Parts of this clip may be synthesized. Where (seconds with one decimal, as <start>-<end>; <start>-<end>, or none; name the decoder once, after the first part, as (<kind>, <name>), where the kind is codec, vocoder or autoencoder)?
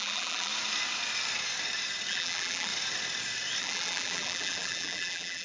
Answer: 0.0-0.5 (vocoder, BigVGAN v2); 2.1-2.7; 3.6-5.4